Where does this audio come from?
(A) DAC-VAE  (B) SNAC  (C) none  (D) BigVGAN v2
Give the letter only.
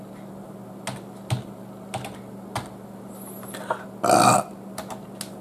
C